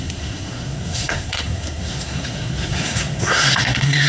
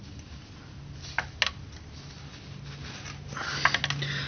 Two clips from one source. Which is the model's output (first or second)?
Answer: first